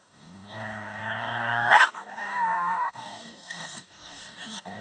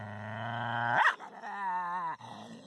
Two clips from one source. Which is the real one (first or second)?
second